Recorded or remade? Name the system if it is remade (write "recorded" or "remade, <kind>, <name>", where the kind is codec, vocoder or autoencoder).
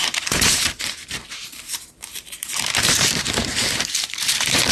remade, vocoder, BigVGAN v2